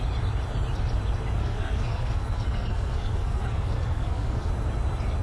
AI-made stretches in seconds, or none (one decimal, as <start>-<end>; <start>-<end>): 1.4-4.5